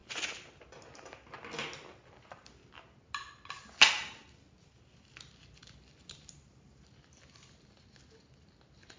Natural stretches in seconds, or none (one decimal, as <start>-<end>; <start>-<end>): 0.0-9.0